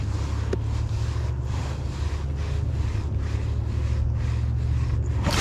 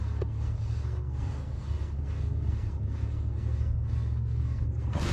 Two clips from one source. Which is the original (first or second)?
first